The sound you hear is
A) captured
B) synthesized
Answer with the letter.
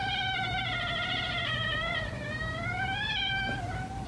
B